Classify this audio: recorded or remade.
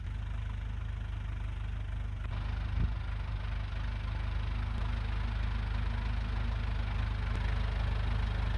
recorded